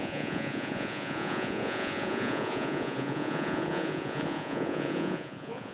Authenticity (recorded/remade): remade